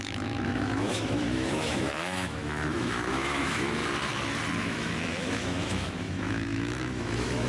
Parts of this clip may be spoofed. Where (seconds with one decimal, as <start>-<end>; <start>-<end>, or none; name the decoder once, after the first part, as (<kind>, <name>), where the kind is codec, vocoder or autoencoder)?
0.0-3.8 (autoencoder, DAC-VAE); 4.6-7.5